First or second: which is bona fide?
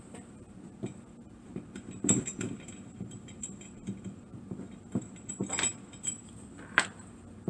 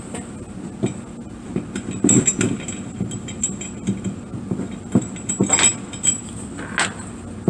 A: second